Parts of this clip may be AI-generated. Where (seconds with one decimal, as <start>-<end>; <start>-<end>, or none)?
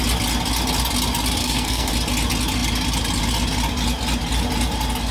1.4-1.9